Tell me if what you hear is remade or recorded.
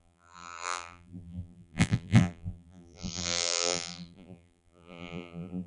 remade